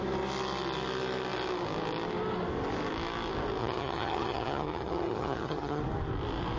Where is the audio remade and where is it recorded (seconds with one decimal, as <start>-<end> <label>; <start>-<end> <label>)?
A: 0.0-3.6 recorded; 3.6-5.8 remade; 5.8-6.6 recorded